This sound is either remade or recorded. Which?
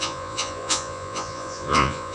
remade